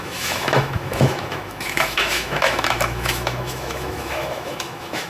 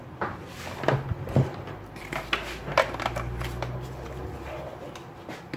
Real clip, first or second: second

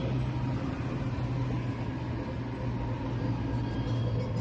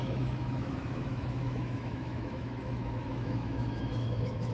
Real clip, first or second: first